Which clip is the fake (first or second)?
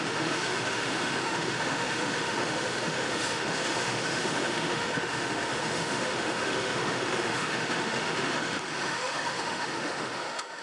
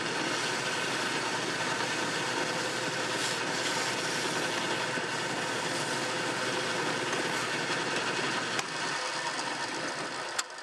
first